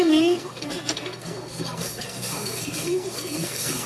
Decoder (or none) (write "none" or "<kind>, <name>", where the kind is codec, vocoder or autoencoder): codec, SNAC